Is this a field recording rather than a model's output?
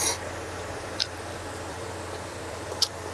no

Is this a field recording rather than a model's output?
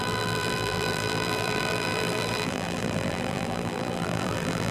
no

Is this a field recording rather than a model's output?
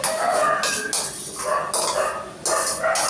yes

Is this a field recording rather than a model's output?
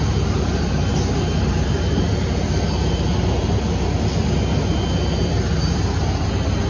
yes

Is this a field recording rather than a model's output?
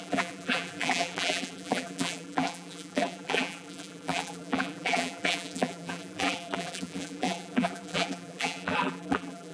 no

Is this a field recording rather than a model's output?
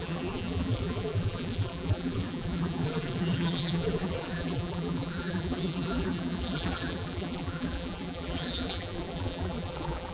no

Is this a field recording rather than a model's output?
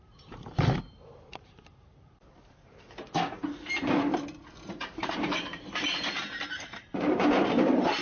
no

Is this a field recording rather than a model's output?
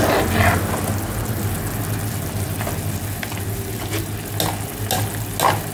yes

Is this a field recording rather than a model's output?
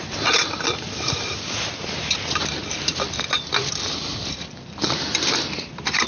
no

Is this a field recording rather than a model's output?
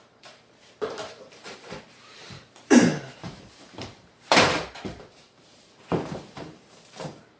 no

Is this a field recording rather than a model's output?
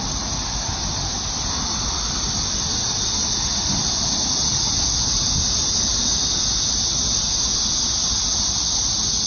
yes